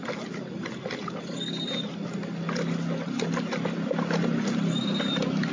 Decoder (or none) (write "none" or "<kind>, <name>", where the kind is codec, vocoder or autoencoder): none